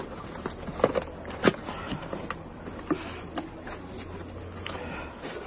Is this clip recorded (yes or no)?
yes